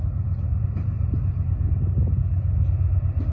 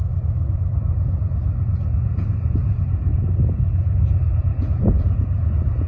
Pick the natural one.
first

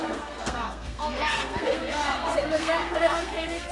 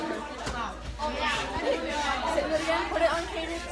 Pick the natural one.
second